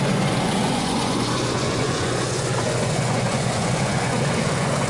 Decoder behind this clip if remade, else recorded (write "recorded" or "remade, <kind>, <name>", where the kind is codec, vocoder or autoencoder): remade, vocoder, Vocos